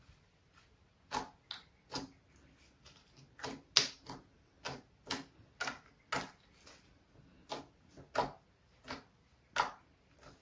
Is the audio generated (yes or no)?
no